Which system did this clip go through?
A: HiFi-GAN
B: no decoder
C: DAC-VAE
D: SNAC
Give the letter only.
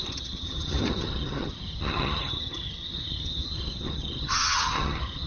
A